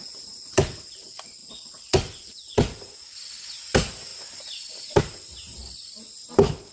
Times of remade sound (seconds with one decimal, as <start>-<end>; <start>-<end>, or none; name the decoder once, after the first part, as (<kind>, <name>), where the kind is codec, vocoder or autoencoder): none